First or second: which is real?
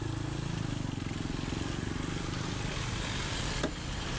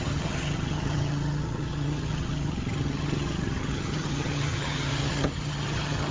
first